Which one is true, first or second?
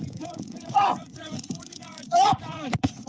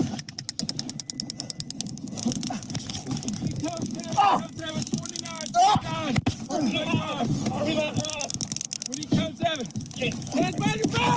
second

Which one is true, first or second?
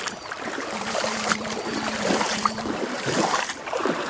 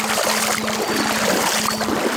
second